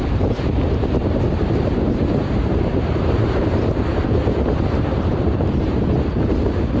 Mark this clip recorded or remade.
remade